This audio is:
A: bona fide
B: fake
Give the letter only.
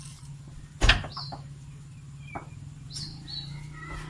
A